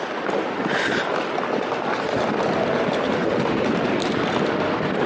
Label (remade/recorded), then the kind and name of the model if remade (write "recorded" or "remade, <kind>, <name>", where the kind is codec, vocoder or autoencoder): recorded